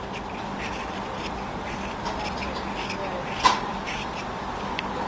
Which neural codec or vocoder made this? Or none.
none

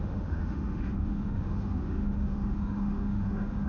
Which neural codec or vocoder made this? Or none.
autoencoder, DAC-VAE